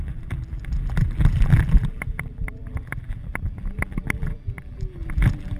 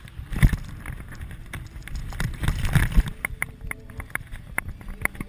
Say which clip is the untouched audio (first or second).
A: second